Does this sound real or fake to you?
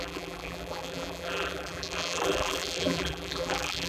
fake